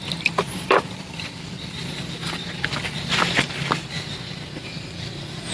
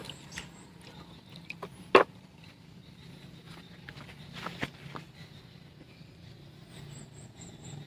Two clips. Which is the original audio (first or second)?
second